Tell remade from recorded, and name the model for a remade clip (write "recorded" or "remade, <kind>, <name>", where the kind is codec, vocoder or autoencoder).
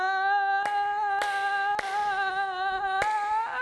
recorded